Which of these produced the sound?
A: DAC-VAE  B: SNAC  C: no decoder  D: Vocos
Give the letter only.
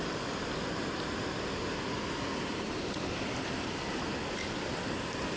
C